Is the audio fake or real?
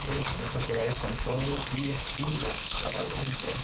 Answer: fake